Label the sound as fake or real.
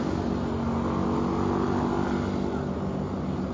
real